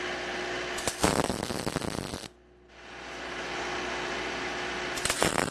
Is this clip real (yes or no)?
yes